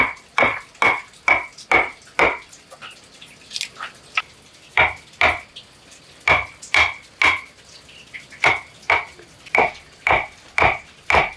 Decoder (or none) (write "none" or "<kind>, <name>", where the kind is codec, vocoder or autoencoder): none